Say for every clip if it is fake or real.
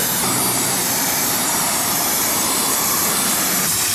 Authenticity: fake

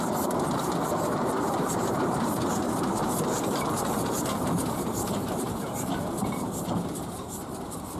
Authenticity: fake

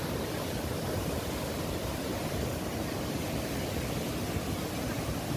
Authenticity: fake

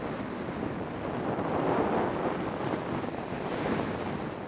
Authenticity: real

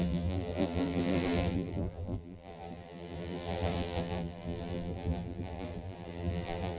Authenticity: fake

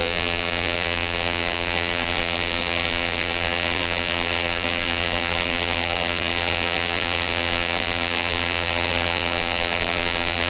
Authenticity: fake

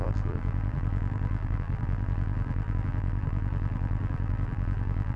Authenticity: fake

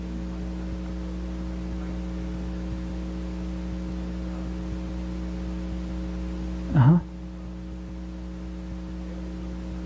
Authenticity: real